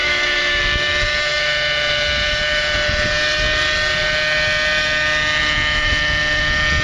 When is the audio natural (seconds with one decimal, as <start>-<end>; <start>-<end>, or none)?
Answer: 0.6-6.8